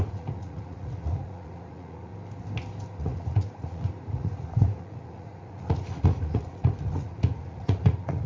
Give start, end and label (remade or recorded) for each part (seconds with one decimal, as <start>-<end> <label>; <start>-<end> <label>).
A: 0.0-2.1 remade; 2.1-3.0 recorded; 3.0-8.3 remade